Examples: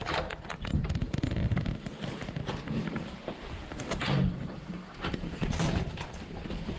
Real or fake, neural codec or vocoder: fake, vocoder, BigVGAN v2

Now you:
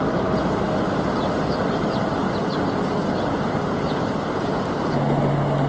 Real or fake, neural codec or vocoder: real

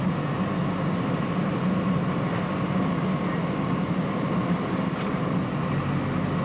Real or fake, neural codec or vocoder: real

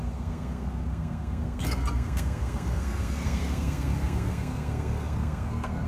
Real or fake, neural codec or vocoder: fake, codec, SNAC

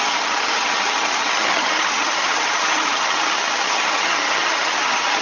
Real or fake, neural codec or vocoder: fake, vocoder, HiFi-GAN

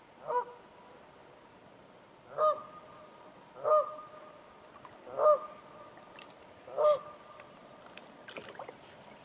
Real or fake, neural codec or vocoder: real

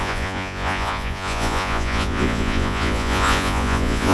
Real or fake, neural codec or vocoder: fake, vocoder, Vocos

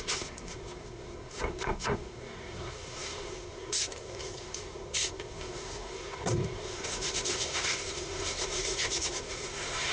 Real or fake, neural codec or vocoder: fake, codec, SNAC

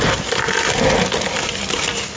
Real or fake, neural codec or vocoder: real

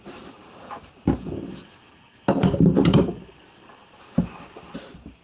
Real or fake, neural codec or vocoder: fake, vocoder, BigVGAN v2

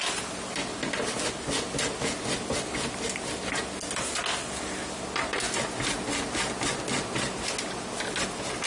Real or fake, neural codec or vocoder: real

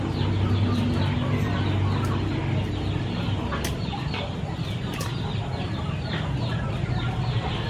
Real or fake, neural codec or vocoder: real